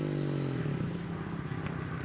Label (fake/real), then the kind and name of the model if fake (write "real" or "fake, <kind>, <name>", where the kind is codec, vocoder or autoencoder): real